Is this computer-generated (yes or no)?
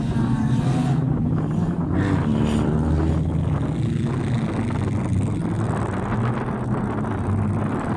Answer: no